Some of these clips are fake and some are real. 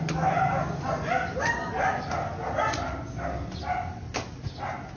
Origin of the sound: real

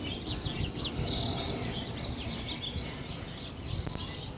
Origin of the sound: real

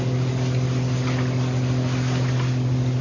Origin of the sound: real